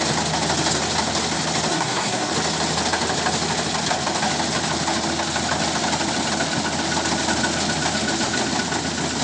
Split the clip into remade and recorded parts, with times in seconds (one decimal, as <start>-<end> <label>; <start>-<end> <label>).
0.0-1.7 recorded; 1.7-2.3 remade; 2.3-9.2 recorded